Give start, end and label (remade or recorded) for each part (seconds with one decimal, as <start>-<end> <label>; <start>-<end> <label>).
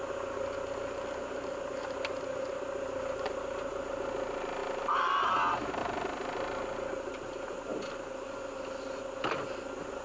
0.0-10.0 recorded